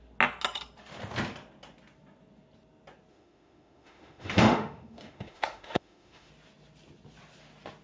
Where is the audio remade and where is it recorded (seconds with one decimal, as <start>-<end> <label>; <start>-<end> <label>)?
0.0-3.1 recorded; 3.1-6.3 remade; 6.3-7.8 recorded